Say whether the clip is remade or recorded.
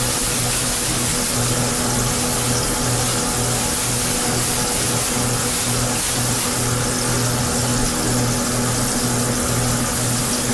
recorded